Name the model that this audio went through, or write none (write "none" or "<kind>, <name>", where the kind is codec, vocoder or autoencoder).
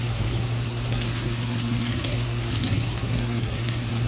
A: codec, SNAC